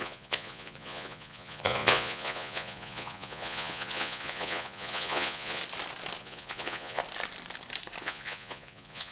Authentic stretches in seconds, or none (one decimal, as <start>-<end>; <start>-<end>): 5.6-6.2; 7.0-8.0